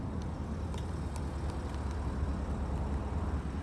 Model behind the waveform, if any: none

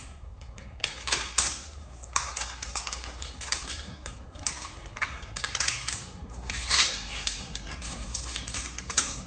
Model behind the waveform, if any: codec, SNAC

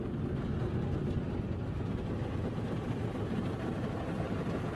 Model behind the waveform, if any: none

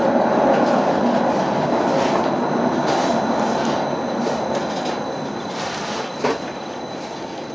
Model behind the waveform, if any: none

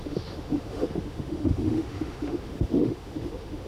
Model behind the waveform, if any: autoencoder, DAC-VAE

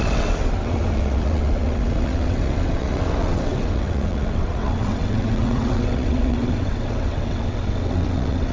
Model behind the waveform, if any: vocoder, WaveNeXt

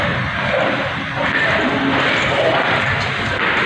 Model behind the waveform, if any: vocoder, BigVGAN v2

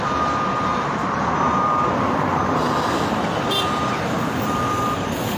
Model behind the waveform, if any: none